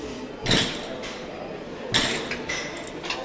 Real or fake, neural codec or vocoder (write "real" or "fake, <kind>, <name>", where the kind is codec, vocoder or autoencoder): real